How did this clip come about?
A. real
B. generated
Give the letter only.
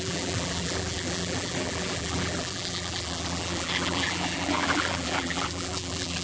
B